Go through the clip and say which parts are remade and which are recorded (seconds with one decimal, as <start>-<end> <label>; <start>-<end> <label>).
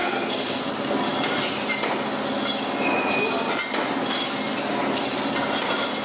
0.0-0.6 remade; 0.6-6.0 recorded